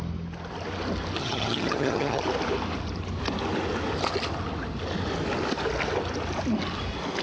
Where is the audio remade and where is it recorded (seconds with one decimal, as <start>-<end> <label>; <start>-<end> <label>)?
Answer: 0.0-1.2 recorded; 1.2-2.2 remade; 2.2-7.2 recorded